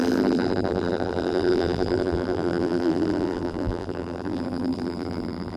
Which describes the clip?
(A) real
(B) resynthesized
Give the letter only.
B